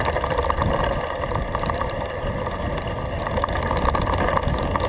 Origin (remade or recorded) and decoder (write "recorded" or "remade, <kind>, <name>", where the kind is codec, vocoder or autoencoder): recorded